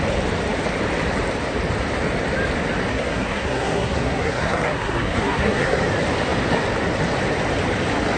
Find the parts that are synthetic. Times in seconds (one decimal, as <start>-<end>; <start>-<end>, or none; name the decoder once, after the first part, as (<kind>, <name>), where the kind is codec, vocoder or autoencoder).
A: 2.9-5.8 (codec, SNAC)